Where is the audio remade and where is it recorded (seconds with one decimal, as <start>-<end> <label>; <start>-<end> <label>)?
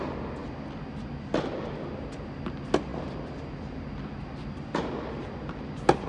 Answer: 0.0-6.1 recorded